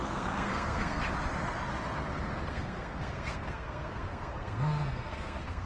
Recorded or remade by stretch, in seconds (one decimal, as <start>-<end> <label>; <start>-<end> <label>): 0.0-1.0 remade; 1.0-2.5 recorded; 2.5-5.7 remade